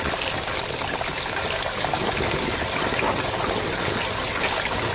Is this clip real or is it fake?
real